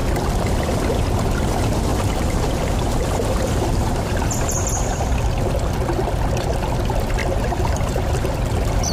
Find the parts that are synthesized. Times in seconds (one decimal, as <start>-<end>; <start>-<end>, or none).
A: 1.9-5.0; 7.2-8.1